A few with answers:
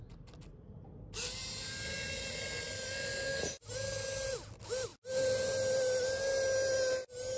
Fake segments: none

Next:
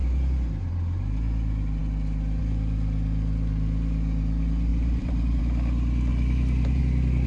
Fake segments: 0.0-0.7; 4.7-5.4; 6.1-6.8

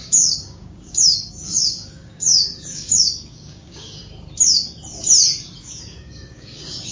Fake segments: 0.0-4.0; 5.6-6.9